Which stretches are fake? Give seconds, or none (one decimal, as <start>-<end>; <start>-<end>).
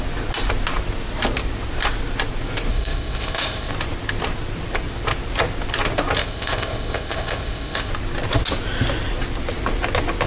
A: 2.7-3.7; 6.2-7.9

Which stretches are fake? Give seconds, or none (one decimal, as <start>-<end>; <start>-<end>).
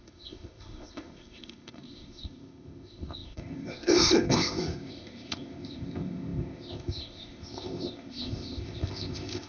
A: 0.0-9.5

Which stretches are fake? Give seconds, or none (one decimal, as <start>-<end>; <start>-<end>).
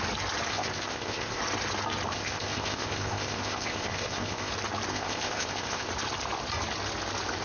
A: 0.5-1.4; 2.1-4.5; 4.9-5.9